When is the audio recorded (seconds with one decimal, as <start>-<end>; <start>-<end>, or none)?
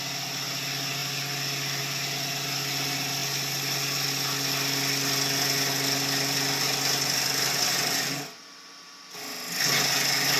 0.0-10.4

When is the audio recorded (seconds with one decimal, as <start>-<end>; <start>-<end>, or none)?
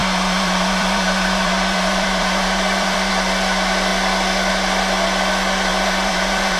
3.1-5.7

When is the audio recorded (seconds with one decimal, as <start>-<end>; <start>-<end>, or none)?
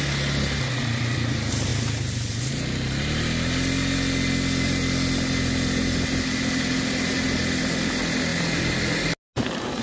0.0-9.8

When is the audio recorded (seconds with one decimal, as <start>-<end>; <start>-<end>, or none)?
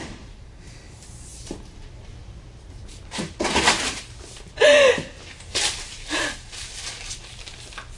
0.7-8.0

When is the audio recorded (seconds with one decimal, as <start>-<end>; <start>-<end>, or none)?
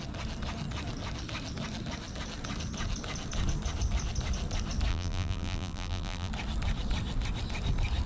0.0-4.9; 6.3-8.1